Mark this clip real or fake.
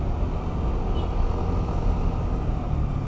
real